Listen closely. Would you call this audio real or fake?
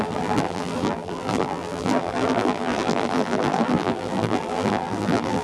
fake